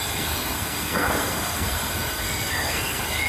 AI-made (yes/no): yes